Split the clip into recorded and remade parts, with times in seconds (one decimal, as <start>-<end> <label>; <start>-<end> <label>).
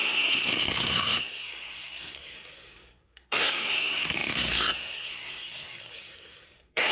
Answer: 0.0-6.9 remade